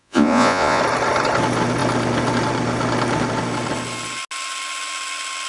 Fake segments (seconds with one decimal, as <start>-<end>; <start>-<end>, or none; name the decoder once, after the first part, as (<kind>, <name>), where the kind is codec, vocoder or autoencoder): 0.0-0.8 (vocoder, Vocos)